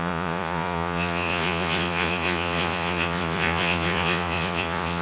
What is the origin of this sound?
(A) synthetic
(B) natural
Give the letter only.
A